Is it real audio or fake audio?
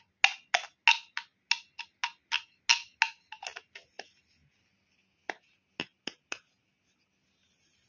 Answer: real